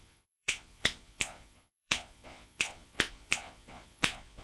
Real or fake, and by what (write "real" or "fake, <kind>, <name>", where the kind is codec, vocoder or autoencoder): fake, vocoder, Vocos